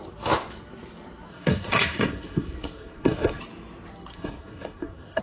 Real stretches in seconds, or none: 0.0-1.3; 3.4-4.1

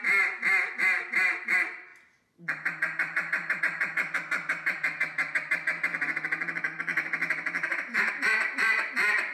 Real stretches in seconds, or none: none

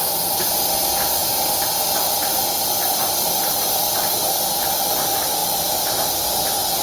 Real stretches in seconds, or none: 0.0-6.8

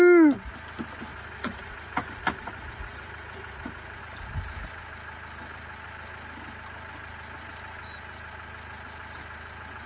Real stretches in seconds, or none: 0.0-1.1; 4.0-9.9

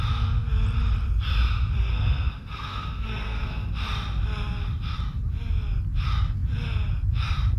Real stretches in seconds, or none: 0.0-1.9; 3.7-7.6

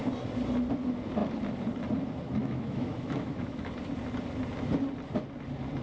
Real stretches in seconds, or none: 0.0-2.4; 3.7-5.8